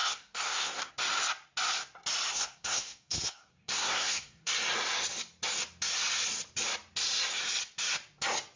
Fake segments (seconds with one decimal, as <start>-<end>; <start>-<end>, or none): 0.0-0.9; 2.3-4.5

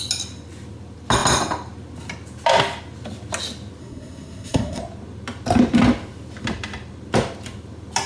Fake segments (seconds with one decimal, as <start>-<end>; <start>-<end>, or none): 3.8-4.8

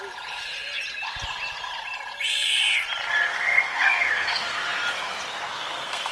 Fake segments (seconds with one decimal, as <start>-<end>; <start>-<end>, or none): 3.3-4.6; 5.5-6.1

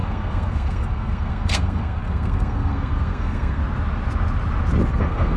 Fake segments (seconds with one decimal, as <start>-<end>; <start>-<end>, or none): 0.0-3.6; 4.9-5.4

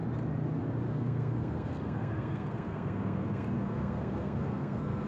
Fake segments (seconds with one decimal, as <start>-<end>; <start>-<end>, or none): 0.9-5.1